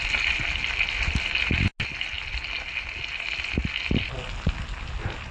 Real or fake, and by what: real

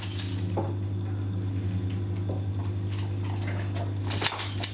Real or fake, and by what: real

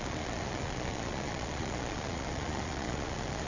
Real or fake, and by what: fake, vocoder, Vocos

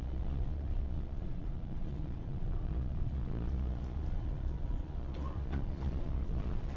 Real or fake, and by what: fake, vocoder, Vocos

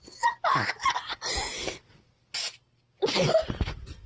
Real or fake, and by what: real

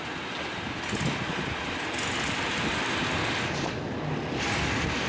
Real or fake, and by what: real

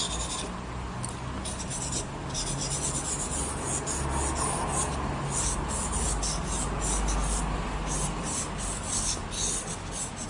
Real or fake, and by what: real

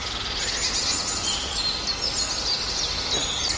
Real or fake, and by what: real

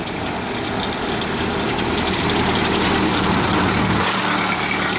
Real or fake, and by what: real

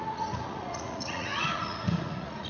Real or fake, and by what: fake, vocoder, Vocos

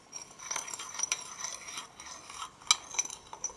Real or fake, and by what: real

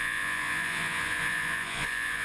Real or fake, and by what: fake, vocoder, Vocos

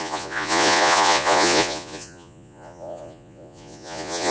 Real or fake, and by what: fake, vocoder, Vocos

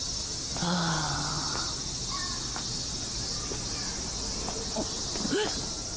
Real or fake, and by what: real